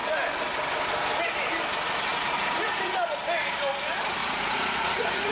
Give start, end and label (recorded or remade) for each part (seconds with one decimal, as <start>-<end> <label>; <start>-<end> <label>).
0.0-2.1 recorded; 2.1-2.9 remade; 2.9-4.2 recorded; 4.2-5.3 remade